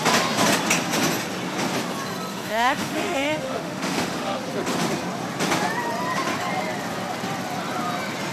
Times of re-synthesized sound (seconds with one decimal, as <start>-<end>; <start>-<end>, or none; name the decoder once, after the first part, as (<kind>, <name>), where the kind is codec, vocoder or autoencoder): 2.3-4.4 (autoencoder, DAC-VAE)